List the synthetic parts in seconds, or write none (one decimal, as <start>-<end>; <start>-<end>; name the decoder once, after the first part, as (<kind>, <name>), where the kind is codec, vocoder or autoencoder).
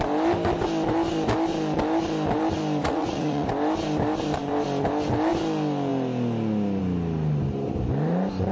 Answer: 2.8-3.5 (vocoder, Vocos)